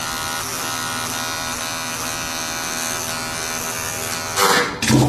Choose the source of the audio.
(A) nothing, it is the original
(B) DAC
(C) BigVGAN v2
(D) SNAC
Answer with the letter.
A